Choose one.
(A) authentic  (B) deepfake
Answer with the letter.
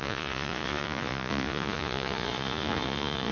B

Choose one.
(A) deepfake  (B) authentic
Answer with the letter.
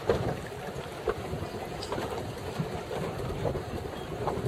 B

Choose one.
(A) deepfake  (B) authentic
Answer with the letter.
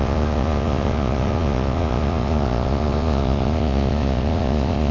A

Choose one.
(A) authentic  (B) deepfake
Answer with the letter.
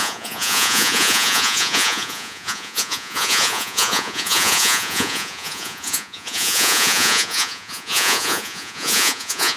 B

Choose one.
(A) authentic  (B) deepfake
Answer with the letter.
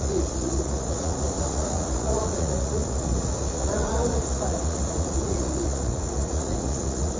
B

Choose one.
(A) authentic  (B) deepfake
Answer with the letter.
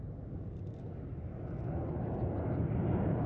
A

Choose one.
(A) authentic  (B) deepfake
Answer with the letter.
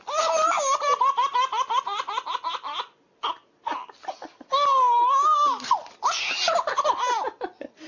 A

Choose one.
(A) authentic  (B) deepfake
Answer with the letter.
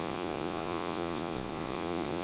B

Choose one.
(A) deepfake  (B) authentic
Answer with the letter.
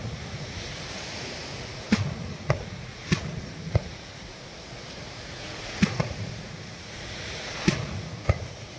A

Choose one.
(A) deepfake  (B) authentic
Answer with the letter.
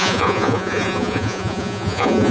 A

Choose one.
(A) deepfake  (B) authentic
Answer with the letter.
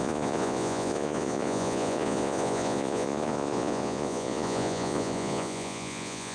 A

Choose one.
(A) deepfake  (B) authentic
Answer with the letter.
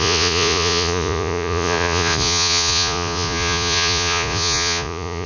A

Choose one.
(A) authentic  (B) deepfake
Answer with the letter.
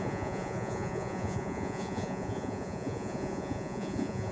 B